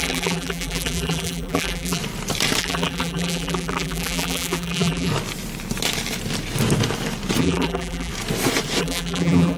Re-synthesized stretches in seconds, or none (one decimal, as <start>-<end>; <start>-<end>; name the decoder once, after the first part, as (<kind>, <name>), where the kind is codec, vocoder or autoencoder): 0.0-2.0 (vocoder, BigVGAN v2); 2.6-5.1; 7.4-8.1; 8.8-9.6